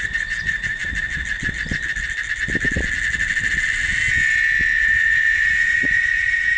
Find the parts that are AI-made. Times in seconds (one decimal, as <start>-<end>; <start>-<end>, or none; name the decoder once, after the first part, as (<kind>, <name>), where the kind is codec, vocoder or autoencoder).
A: 0.0-0.8 (vocoder, Vocos); 4.8-6.6